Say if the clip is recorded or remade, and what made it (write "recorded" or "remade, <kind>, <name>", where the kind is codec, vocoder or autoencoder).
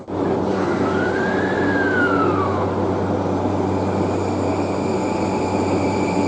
recorded